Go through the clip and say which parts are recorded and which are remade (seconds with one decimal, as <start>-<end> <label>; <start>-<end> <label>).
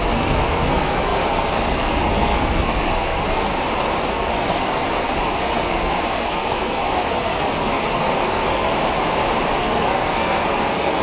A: 0.0-3.5 remade; 3.5-4.1 recorded; 4.1-8.7 remade; 8.7-9.6 recorded; 9.6-11.0 remade